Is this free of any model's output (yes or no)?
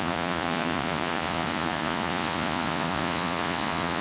no